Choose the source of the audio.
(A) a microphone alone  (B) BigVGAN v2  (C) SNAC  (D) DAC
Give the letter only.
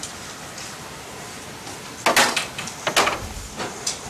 A